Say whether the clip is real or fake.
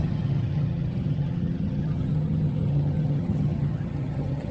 fake